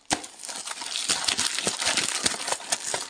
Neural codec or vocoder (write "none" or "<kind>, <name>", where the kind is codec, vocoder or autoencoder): none